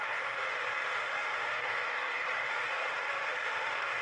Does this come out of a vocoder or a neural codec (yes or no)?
yes